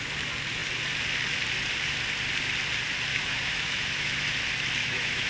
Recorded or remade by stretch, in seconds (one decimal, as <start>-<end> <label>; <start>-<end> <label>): 0.0-3.1 recorded; 3.1-4.2 remade; 4.2-4.8 recorded; 4.8-5.3 remade